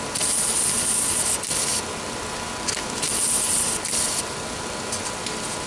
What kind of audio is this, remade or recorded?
recorded